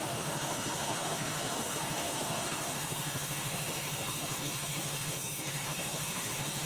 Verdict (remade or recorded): remade